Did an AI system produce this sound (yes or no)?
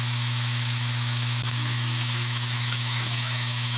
yes